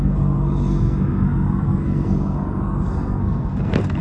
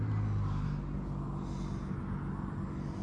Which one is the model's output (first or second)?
first